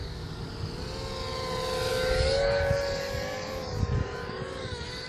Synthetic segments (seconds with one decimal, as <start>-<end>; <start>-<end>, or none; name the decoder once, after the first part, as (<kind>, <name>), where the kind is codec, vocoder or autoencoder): 0.0-0.5 (codec, DAC); 1.9-5.1